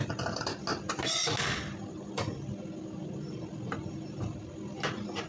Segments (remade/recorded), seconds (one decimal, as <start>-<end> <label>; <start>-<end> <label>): 0.0-5.3 recorded